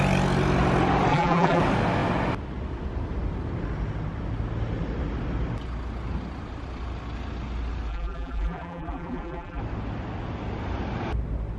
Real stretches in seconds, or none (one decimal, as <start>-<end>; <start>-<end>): 0.0-1.1; 1.6-7.9; 9.6-11.6